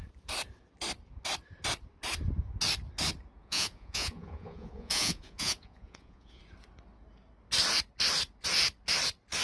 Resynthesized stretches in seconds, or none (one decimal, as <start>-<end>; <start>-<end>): 3.4-6.4